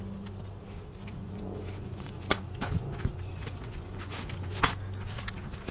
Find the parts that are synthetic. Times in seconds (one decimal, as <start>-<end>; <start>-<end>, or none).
1.1-4.5